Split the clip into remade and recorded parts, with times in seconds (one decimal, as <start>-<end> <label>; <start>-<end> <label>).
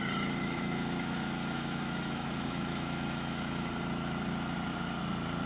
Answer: 0.0-0.4 recorded; 0.4-3.7 remade; 3.7-5.5 recorded